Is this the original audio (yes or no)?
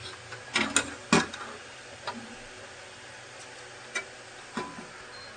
yes